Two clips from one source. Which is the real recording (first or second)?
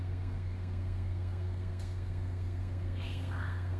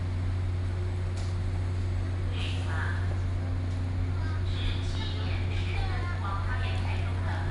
second